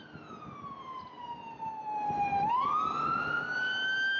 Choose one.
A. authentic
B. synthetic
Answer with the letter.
A